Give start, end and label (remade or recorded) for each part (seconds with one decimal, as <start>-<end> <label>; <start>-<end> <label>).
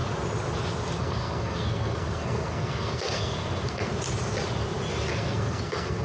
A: 0.0-1.0 recorded; 1.0-3.9 remade; 3.9-5.1 recorded; 5.1-6.0 remade